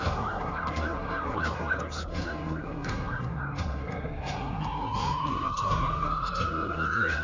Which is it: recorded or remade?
remade